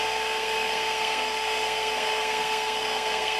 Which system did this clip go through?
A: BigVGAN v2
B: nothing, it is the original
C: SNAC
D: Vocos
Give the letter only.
C